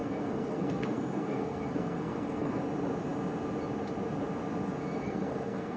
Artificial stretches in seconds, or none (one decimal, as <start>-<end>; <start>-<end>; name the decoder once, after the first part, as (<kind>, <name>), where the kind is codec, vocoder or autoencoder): 0.0-2.6 (codec, SNAC); 5.0-5.8